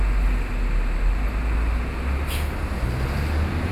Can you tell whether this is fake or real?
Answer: real